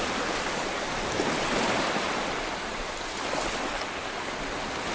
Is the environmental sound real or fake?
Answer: real